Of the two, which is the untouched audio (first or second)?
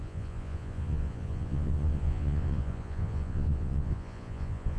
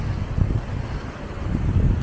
second